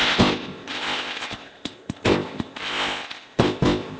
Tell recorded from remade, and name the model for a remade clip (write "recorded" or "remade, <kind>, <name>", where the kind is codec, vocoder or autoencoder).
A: remade, codec, ZipCodec